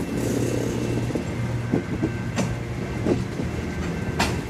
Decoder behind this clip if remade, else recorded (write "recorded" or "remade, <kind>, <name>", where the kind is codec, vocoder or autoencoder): recorded